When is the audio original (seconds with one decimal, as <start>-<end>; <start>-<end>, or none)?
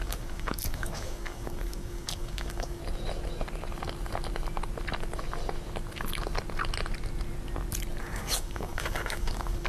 2.8-8.0